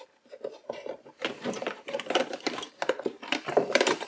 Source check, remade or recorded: remade